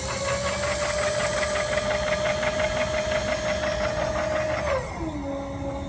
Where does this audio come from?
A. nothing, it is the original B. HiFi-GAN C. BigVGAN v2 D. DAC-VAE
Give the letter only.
A